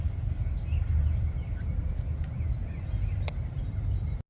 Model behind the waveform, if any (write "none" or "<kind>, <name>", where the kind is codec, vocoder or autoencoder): none